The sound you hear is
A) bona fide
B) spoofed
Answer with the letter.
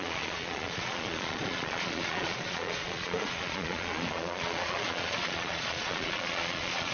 B